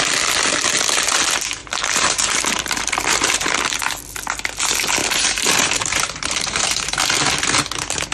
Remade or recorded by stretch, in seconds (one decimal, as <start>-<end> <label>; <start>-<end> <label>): 0.0-1.6 recorded; 1.6-3.5 remade; 3.5-5.0 recorded; 5.0-7.0 remade; 7.0-8.1 recorded